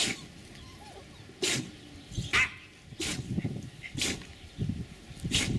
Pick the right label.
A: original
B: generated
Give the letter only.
A